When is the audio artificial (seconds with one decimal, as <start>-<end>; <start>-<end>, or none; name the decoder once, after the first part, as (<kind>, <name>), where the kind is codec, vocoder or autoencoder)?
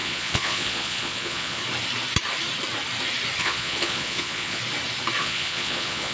0.0-1.6 (vocoder, Vocos); 3.4-4.6; 5.2-6.1